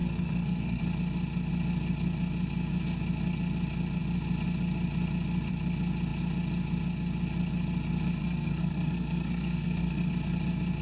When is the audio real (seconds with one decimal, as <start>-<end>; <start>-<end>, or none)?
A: 0.8-8.2; 10.1-10.8